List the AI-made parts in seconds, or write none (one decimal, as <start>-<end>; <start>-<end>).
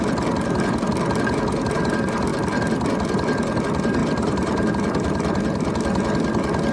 4.0-4.7